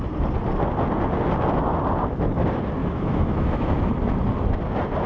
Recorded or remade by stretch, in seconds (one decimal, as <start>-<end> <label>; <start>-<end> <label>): 0.0-2.8 recorded; 2.8-3.8 remade; 3.8-5.1 recorded